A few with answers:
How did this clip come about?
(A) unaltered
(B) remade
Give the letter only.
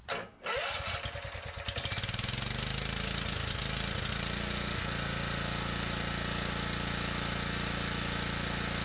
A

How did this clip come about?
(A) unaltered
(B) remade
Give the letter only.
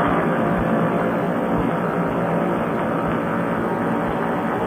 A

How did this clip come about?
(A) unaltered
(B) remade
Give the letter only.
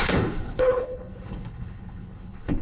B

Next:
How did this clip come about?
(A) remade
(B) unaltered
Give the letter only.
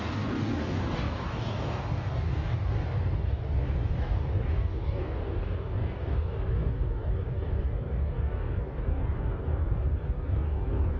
A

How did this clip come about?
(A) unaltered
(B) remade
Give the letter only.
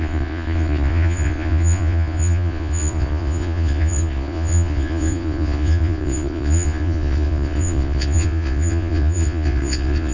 B